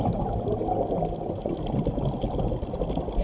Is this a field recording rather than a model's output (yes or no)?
yes